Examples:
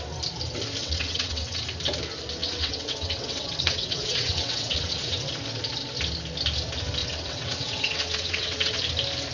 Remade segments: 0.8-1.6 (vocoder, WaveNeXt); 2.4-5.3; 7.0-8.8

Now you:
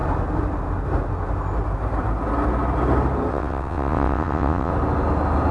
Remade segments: 3.3-4.7 (vocoder, WaveNeXt)

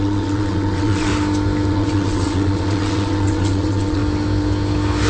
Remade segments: 0.0-1.1 (vocoder, WaveNeXt); 1.7-4.0

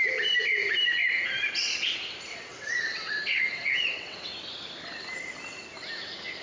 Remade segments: 2.3-4.3 (vocoder, WaveNeXt)

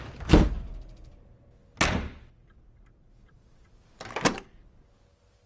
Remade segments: none